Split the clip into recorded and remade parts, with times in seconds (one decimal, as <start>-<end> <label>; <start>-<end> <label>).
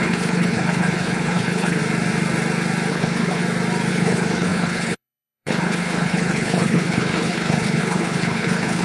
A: 0.0-1.8 remade; 1.8-2.9 recorded; 2.9-3.4 remade; 3.4-3.9 recorded; 3.9-8.8 remade